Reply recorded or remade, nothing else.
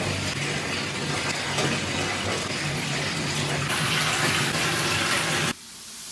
recorded